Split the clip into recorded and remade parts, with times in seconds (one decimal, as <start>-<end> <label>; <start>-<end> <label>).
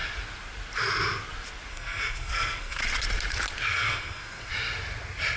0.0-1.7 recorded; 1.7-2.8 remade; 2.8-3.7 recorded; 3.7-4.5 remade; 4.5-5.4 recorded